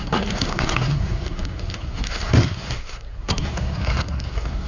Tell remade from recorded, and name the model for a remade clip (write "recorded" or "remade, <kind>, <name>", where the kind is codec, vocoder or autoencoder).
remade, codec, SNAC